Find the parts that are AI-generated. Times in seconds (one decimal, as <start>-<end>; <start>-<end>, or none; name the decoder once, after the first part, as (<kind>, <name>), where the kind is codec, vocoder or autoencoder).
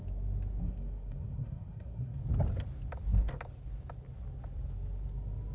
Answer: 0.6-2.2 (codec, SNAC)